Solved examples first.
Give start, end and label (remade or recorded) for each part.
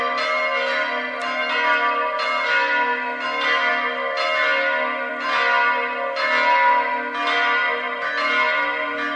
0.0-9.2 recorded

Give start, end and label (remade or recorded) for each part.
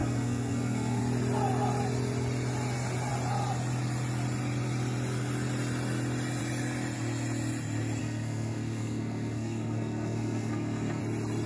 0.0-1.0 remade; 1.0-8.0 recorded; 8.0-11.0 remade; 11.0-11.5 recorded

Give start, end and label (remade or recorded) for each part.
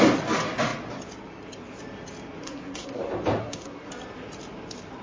0.0-2.4 recorded; 2.4-3.0 remade; 3.0-3.4 recorded; 3.4-3.9 remade; 3.9-5.0 recorded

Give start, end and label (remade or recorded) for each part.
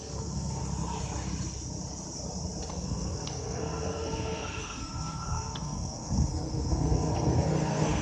0.0-0.6 remade; 0.6-2.7 recorded; 2.7-8.0 remade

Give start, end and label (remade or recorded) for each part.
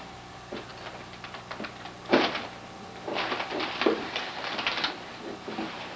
0.0-6.0 recorded